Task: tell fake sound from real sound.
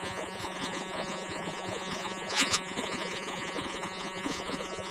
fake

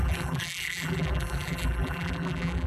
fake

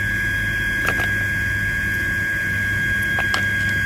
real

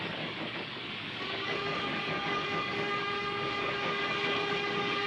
fake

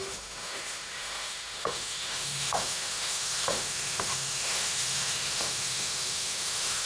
fake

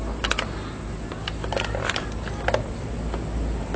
real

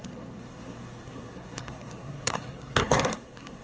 fake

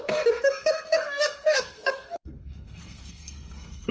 fake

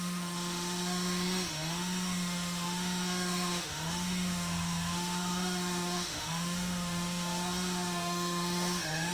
fake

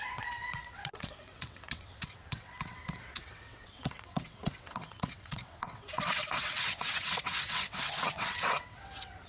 fake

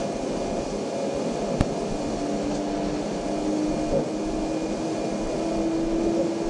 real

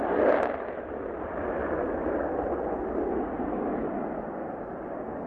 real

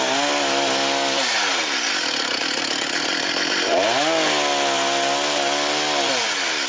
real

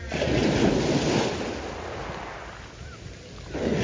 real